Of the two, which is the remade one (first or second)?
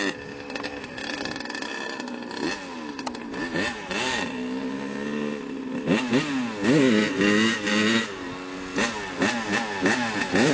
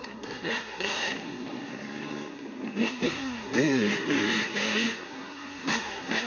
second